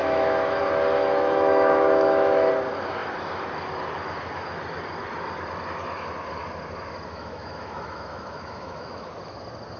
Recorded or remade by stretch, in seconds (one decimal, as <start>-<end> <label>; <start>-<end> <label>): 0.0-0.6 remade; 0.6-1.0 recorded; 1.0-2.5 remade; 2.5-7.1 recorded; 7.1-9.1 remade; 9.1-9.8 recorded